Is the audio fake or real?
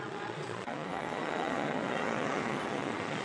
fake